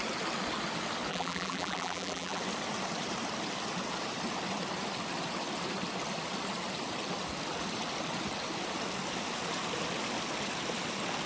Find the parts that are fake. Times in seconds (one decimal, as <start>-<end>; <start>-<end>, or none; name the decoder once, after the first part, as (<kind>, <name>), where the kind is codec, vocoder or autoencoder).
1.1-2.4 (vocoder, BigVGAN v2)